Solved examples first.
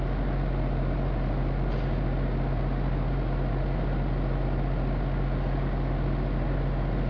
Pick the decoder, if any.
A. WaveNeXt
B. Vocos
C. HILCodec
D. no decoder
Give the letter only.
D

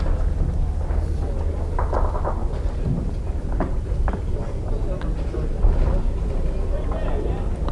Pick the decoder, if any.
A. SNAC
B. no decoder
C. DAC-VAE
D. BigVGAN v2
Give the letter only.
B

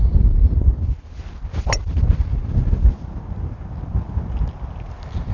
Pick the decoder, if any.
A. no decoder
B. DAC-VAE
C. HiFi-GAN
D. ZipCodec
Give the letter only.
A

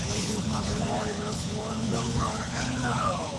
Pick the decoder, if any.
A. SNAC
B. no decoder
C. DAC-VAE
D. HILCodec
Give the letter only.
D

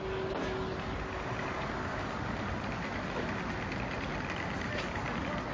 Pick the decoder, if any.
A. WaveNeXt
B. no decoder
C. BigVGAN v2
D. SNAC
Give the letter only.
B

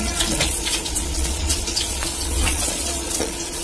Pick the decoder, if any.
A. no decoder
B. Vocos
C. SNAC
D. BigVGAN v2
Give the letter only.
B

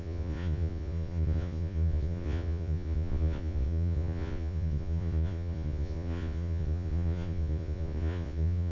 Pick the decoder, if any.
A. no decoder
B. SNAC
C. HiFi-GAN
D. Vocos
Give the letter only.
D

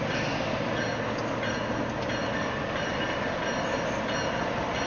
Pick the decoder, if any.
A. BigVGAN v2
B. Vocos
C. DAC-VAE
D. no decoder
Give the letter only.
D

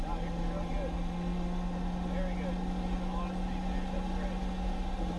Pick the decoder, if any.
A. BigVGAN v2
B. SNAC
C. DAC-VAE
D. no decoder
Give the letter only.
D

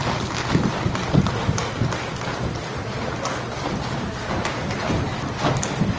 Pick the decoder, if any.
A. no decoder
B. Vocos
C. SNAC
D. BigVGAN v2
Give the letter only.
A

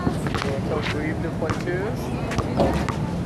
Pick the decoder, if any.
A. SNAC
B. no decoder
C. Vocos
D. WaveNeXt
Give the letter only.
B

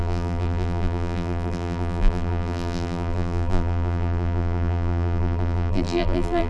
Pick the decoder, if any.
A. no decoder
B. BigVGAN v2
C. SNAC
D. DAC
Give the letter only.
B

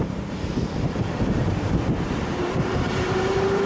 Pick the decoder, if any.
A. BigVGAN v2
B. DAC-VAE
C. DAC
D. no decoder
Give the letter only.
A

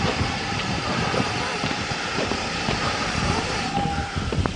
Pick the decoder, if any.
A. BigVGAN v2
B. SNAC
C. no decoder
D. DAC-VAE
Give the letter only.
A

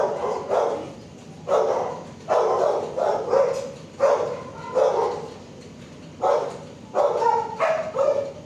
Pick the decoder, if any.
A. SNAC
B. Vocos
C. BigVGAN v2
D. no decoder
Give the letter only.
D